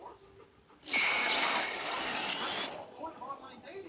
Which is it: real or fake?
real